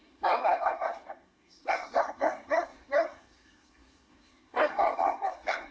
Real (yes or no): no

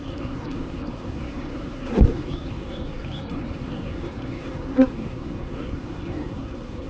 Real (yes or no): no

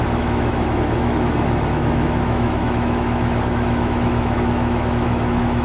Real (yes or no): no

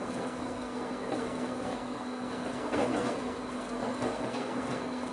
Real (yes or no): no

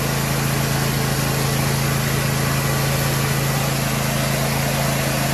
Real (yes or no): yes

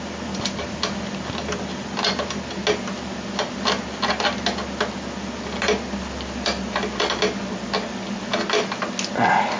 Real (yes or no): yes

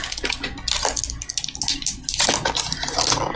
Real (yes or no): yes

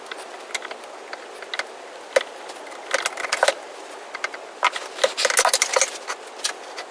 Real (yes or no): yes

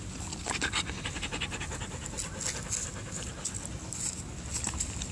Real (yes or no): yes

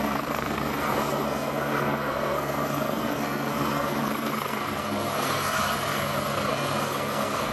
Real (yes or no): no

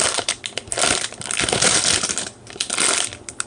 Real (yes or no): yes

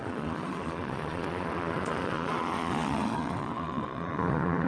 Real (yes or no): no